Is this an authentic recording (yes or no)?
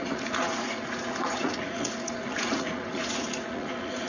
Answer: no